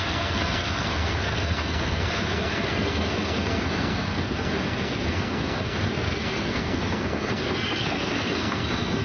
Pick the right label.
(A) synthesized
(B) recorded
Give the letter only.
A